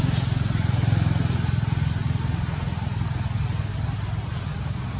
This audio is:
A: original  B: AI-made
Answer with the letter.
A